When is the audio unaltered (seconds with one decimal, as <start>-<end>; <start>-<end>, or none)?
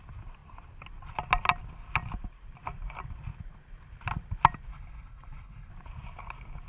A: 0.0-4.7; 5.7-6.7